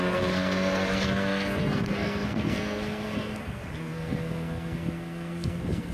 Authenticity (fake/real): fake